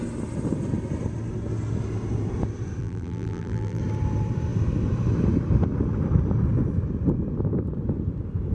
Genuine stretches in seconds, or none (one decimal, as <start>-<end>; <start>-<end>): 0.0-2.8; 3.8-8.5